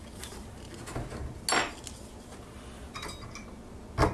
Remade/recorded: recorded